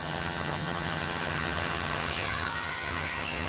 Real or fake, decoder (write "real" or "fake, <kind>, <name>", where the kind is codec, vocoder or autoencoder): fake, vocoder, HiFi-GAN